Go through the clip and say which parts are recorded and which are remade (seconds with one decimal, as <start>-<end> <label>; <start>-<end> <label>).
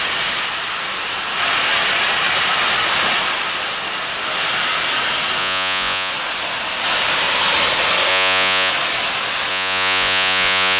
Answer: 0.0-5.4 recorded; 5.4-6.1 remade; 6.1-8.1 recorded; 8.1-8.7 remade; 8.7-9.5 recorded; 9.5-10.8 remade